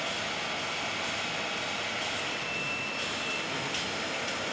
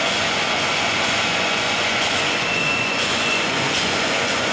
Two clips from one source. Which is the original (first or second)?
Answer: first